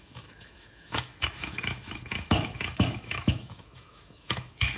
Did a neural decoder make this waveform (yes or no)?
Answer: yes